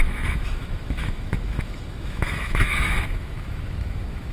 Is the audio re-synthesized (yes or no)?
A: yes